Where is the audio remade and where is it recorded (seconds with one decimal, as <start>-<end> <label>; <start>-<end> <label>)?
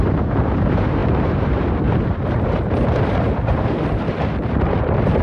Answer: 0.0-5.2 remade